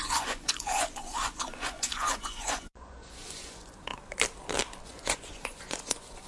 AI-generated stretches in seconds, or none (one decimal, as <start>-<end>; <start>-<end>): 0.0-3.9; 4.8-6.3